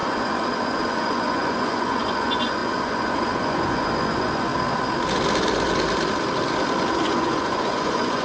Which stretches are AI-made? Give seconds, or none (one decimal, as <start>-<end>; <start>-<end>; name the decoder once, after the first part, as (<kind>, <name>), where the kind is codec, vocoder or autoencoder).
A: 0.0-4.5 (vocoder, Vocos); 7.0-8.2